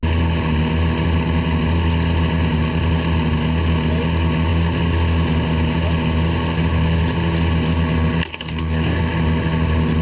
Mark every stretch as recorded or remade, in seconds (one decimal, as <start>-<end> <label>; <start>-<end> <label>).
0.0-8.3 recorded; 8.3-9.0 remade; 9.0-10.0 recorded